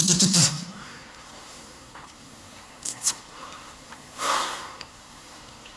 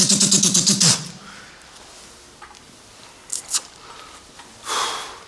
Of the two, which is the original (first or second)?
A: second